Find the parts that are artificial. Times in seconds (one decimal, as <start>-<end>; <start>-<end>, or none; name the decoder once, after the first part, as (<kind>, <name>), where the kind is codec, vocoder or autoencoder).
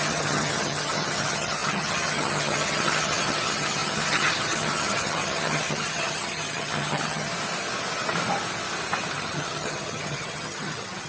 0.0-7.3 (vocoder, HiFi-GAN); 9.1-11.1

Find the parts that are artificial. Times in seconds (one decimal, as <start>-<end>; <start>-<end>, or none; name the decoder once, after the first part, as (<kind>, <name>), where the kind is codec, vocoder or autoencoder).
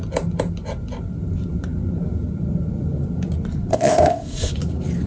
3.7-4.5 (codec, ZipCodec)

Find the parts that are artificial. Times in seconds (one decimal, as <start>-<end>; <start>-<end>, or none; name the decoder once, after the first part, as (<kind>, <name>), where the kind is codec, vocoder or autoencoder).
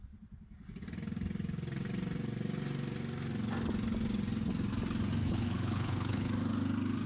5.2-6.3 (codec, HILCodec)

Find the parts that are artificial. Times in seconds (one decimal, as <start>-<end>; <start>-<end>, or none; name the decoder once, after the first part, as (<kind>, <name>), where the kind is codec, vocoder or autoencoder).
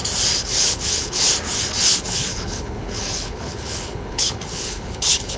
0.4-1.3 (codec, HILCodec); 1.9-5.4